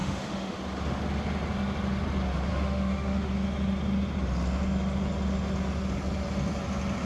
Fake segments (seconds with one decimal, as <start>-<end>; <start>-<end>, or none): 0.0-0.6; 2.5-3.3